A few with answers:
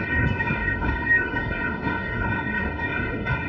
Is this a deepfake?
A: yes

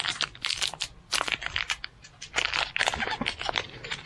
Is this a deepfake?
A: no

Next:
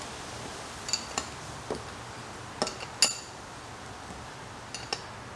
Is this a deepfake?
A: no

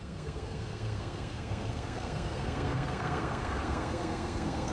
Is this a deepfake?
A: yes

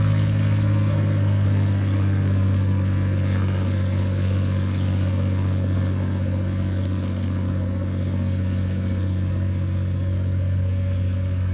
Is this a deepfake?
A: yes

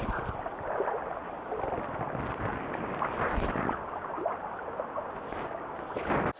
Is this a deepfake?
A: no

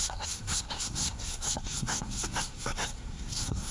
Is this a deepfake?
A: yes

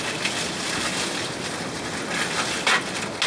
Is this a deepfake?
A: no